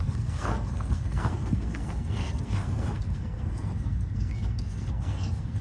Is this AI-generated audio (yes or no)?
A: yes